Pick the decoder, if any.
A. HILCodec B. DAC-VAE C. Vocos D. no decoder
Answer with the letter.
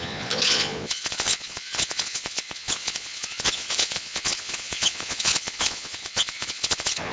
C